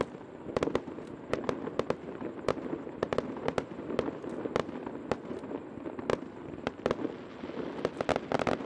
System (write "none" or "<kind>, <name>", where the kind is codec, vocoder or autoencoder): none